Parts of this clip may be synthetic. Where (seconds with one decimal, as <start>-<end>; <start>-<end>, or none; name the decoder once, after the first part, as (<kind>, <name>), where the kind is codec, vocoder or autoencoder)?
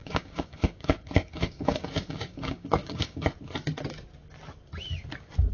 0.0-3.3 (codec, DAC)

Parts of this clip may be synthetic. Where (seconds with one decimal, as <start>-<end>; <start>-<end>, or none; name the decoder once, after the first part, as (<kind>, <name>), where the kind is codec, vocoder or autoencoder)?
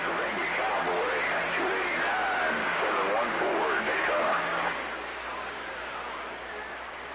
2.6-7.1 (codec, DAC)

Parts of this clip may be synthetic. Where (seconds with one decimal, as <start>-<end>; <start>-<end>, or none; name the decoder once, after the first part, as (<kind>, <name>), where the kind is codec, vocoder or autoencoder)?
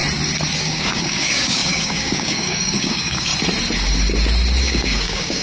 0.6-3.3 (codec, DAC); 4.6-5.4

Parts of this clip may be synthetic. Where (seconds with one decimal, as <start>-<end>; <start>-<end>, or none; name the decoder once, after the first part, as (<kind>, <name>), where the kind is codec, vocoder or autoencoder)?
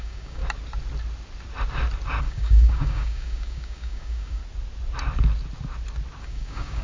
0.0-0.4 (codec, DAC); 2.2-4.4; 6.2-6.8